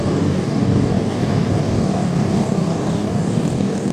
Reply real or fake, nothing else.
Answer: fake